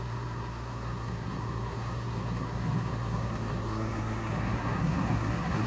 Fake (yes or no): yes